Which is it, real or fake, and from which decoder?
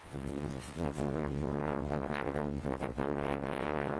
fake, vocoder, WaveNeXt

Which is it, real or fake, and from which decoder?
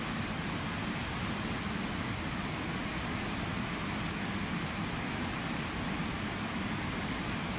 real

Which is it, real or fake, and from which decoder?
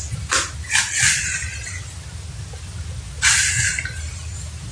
real